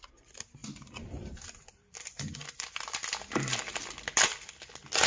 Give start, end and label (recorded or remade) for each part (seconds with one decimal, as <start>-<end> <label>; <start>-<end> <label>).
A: 0.0-0.6 recorded; 0.6-3.7 remade; 3.7-5.1 recorded